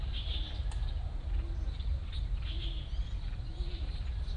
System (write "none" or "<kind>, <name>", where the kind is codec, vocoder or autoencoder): vocoder, BigVGAN v2